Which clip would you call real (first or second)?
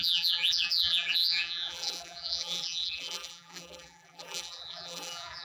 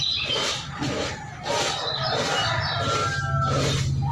second